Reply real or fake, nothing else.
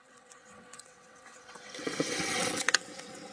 fake